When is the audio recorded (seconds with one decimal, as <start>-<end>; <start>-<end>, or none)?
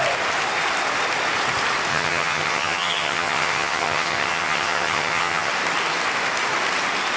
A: 0.0-1.9; 5.5-7.2